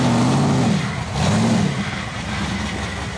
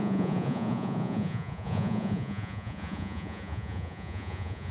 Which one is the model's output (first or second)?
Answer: second